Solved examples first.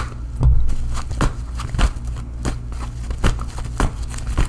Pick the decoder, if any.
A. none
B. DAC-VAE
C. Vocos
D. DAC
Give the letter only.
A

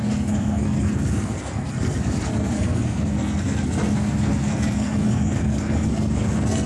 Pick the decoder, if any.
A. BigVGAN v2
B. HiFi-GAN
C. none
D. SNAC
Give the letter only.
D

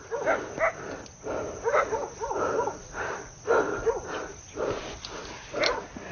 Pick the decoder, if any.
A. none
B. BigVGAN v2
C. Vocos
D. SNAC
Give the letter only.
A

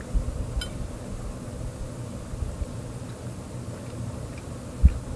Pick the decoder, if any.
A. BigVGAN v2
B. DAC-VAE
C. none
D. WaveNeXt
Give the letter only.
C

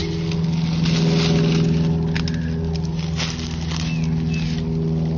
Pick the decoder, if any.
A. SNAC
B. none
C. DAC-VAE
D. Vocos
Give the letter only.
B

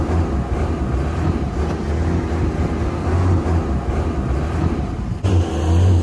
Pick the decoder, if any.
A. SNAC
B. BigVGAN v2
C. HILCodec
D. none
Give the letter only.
D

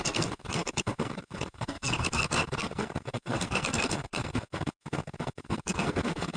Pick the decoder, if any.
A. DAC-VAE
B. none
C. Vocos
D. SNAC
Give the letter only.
D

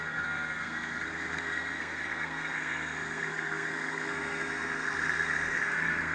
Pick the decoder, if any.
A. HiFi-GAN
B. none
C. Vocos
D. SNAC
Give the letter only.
D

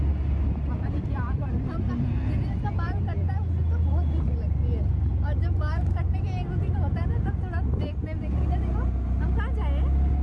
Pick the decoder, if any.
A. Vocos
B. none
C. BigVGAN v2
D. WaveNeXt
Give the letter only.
B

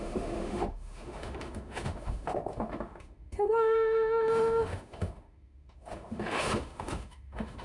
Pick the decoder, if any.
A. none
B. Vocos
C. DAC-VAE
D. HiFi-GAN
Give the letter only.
C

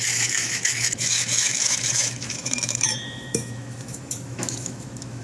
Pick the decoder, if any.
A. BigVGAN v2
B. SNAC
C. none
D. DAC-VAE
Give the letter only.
D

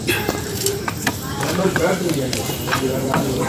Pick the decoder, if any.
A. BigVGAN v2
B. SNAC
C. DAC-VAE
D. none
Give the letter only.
A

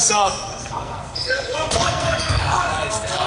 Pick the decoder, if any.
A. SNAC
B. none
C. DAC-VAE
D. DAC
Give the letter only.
A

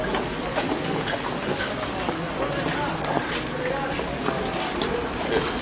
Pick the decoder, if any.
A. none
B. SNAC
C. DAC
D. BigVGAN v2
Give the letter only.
A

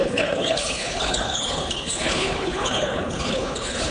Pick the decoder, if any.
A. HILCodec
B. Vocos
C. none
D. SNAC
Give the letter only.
A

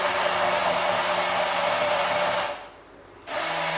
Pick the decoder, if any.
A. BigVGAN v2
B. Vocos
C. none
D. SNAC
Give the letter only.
C